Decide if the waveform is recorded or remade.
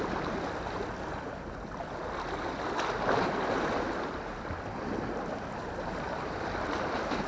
recorded